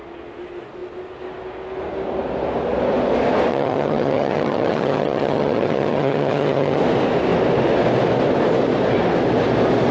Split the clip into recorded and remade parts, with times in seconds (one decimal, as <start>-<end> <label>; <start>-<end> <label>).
0.0-3.5 recorded; 3.5-6.8 remade; 6.8-9.9 recorded